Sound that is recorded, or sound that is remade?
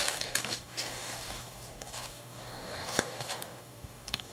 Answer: remade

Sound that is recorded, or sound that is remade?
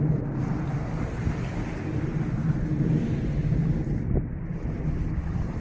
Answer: recorded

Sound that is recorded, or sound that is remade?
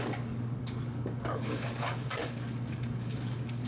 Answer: remade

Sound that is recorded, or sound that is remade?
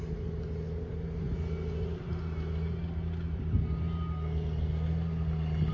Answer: recorded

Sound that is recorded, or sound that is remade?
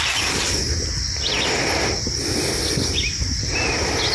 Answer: recorded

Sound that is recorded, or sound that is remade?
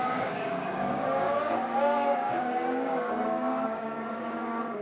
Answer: remade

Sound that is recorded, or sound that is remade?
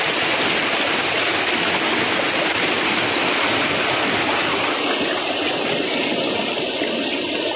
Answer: recorded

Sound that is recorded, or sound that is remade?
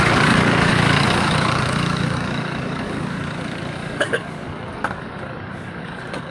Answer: remade